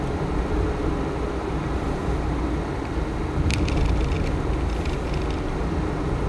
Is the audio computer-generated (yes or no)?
no